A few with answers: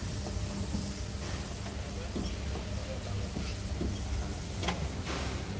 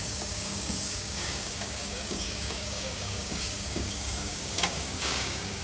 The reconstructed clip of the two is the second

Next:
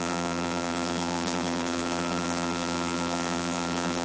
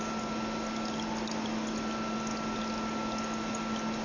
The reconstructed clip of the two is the first